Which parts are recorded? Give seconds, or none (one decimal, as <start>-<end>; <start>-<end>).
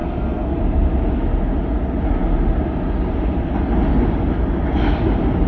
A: 0.6-5.5